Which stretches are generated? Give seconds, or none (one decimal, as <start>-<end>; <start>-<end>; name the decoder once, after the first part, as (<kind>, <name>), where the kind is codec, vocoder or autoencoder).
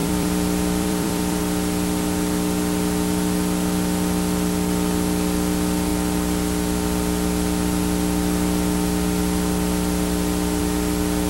0.0-1.4 (vocoder, BigVGAN v2)